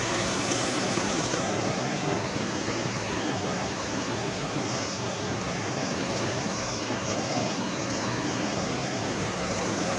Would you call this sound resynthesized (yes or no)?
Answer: yes